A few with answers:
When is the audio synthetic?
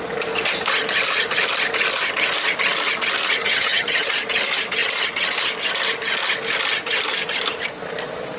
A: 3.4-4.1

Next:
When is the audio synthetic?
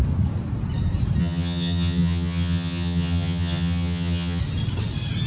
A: 1.2-4.4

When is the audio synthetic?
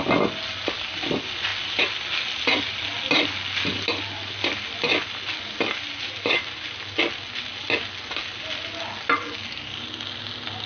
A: none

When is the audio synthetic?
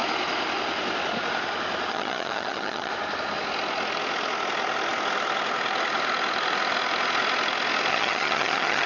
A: 1.9-2.9; 7.9-8.9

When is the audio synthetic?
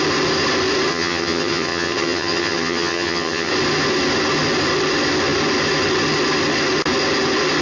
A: 0.9-3.5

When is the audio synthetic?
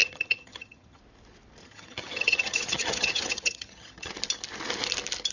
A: 0.0-1.0; 1.6-4.1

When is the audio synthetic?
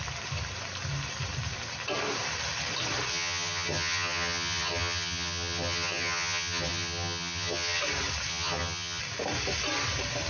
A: 3.1-7.8; 8.3-9.0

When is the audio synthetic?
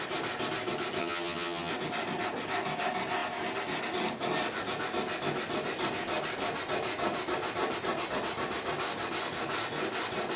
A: 1.0-1.7